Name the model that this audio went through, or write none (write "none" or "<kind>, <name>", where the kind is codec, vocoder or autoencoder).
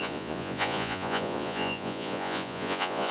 vocoder, Vocos